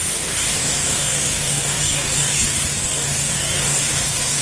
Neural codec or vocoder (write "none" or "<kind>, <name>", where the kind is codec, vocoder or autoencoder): codec, DAC